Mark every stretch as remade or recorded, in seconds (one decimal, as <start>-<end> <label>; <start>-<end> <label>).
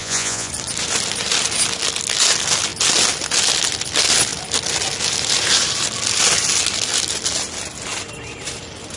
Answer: 0.0-0.5 remade; 0.5-9.0 recorded